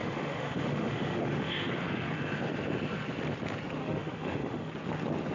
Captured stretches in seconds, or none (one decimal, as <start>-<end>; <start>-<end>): 1.7-3.8; 4.7-5.3